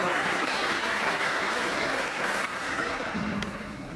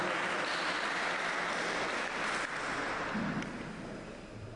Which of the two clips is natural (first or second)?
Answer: second